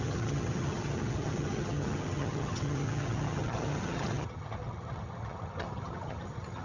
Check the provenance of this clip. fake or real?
fake